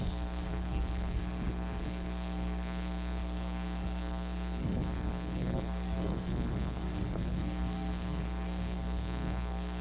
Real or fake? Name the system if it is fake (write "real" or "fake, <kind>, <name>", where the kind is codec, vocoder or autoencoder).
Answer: fake, codec, SNAC